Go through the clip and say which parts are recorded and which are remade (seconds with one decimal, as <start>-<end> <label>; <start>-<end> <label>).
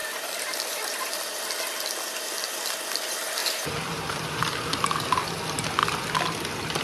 0.0-1.2 remade; 1.2-3.4 recorded; 3.4-4.3 remade; 4.3-6.8 recorded